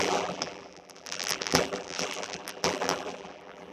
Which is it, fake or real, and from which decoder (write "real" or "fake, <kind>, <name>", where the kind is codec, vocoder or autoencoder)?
fake, vocoder, BigVGAN v2